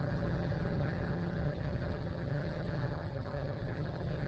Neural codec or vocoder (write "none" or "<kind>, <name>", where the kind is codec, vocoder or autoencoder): vocoder, HiFi-GAN